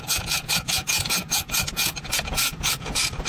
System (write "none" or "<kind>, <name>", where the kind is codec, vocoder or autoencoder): vocoder, Vocos